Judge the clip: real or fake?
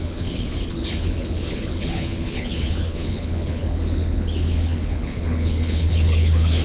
fake